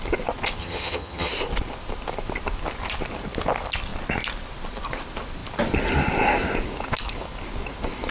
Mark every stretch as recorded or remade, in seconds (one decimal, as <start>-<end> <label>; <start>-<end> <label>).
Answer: 0.0-0.6 recorded; 0.6-1.3 remade; 1.3-8.1 recorded